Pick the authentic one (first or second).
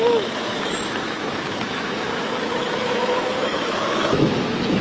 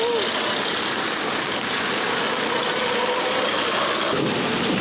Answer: second